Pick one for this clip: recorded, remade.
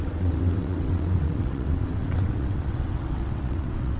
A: remade